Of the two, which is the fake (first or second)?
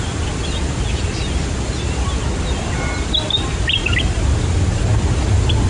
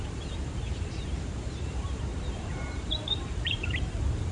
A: second